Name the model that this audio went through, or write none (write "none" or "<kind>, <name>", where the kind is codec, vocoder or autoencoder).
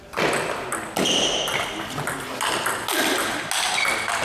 none